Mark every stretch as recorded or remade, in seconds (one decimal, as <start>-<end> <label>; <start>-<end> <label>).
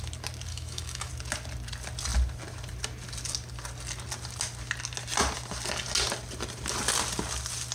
0.0-0.5 recorded; 0.5-1.1 remade; 1.1-7.7 recorded